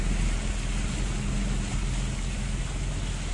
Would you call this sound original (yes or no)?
yes